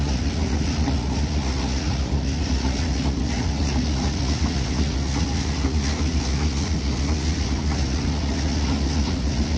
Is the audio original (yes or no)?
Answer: no